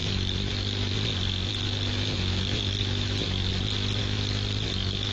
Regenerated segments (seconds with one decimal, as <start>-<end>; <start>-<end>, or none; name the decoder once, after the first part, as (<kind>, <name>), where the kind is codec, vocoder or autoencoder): 0.0-0.9 (autoencoder, DAC-VAE); 1.5-3.5; 4.0-5.1